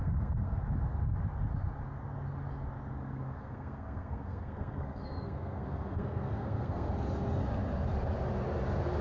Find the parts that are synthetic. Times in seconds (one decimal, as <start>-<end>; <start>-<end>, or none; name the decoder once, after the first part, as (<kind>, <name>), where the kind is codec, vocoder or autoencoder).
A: 0.0-0.6 (codec, SNAC); 3.0-6.9